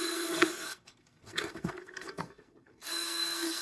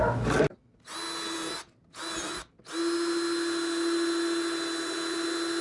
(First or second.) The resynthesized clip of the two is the first